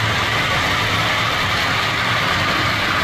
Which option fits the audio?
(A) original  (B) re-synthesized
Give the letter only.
A